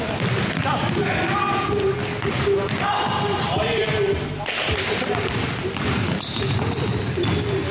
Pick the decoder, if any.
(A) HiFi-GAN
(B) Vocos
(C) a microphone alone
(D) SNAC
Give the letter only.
C